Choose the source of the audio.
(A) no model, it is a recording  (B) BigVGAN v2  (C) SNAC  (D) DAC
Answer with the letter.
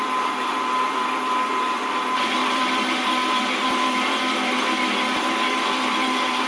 B